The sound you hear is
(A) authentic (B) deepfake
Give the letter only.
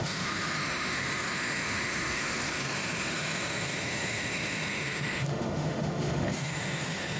B